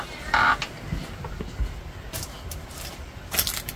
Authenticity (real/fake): real